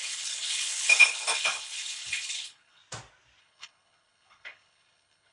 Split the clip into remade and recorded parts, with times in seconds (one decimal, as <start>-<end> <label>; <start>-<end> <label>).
0.0-2.8 remade; 2.8-3.4 recorded; 3.4-5.3 remade